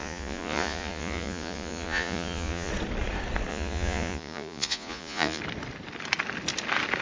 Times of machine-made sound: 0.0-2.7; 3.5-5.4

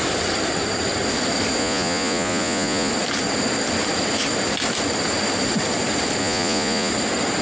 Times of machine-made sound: 1.6-2.9; 6.2-6.9

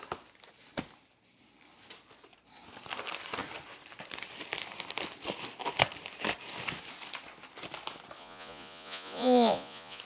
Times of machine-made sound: 8.2-10.0

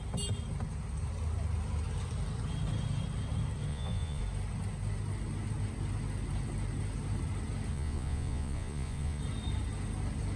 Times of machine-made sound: 3.7-4.2; 7.7-9.2

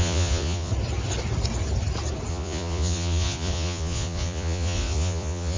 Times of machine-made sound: 0.0-0.7; 2.3-5.6

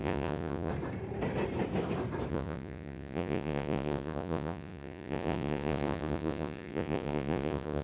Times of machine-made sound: 0.0-0.7; 2.3-7.8

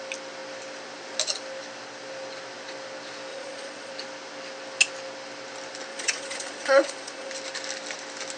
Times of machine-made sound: 3.3-3.9; 5.9-7.3

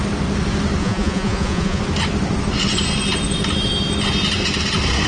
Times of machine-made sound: 0.8-1.8